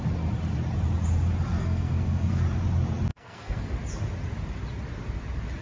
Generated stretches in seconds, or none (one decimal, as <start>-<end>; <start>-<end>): 1.6-2.4; 3.1-3.7